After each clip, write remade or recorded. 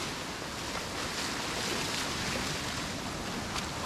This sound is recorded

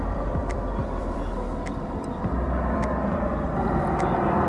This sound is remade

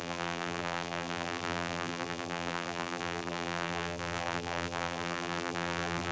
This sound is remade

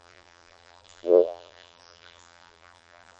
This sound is remade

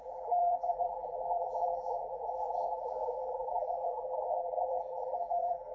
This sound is remade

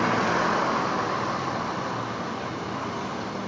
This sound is recorded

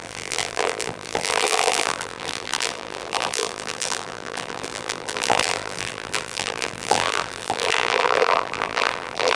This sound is remade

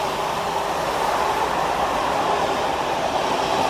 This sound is recorded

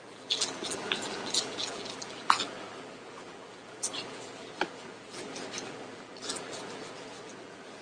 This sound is remade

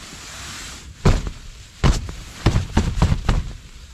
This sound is recorded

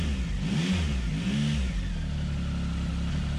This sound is recorded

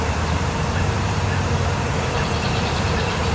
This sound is remade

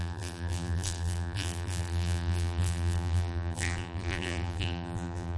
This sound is remade